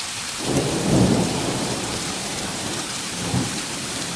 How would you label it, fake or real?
fake